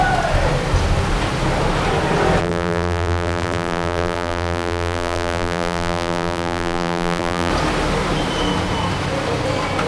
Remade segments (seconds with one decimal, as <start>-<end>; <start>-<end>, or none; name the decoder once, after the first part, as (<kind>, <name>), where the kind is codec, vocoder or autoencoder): 2.4-7.5 (vocoder, BigVGAN v2)